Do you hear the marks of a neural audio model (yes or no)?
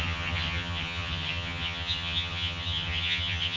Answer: yes